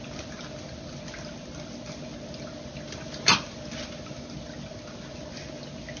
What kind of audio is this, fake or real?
real